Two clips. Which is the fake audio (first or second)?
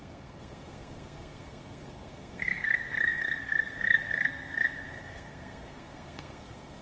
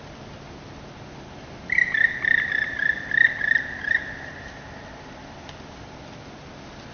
first